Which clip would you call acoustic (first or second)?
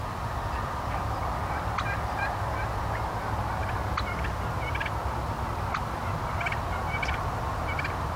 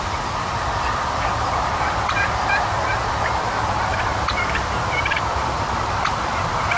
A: first